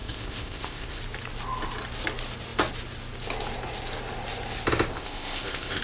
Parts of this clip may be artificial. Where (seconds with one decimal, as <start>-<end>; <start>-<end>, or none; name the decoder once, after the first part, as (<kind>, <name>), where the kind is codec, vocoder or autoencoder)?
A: 0.0-1.0 (codec, ZipCodec); 4.9-5.8